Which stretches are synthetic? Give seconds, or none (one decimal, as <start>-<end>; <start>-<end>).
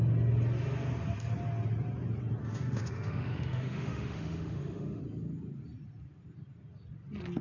2.4-5.0